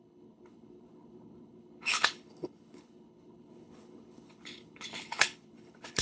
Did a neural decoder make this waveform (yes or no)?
yes